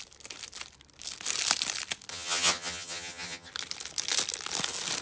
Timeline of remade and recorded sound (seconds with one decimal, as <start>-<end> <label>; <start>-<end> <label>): 0.0-2.1 recorded; 2.1-3.5 remade; 3.5-5.0 recorded